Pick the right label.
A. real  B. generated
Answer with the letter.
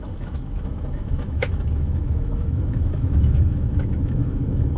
B